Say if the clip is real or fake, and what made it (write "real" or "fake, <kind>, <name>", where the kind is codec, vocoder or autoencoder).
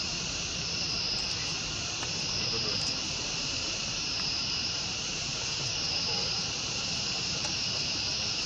fake, vocoder, BigVGAN v2